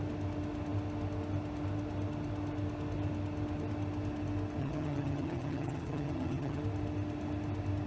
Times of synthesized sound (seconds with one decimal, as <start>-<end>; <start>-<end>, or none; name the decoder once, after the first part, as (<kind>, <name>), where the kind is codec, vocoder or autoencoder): 4.6-6.6 (vocoder, HiFi-GAN)